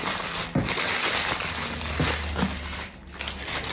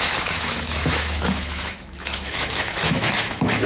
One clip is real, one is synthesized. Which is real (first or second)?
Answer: first